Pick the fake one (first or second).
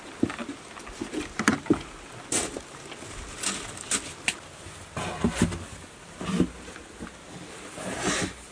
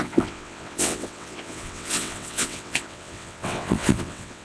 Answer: second